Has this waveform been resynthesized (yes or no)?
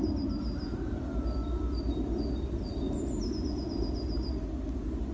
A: no